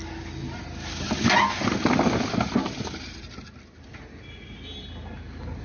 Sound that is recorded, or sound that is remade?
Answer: recorded